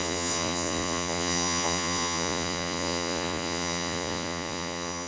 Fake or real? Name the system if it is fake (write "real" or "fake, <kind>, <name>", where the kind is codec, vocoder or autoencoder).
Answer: fake, vocoder, Vocos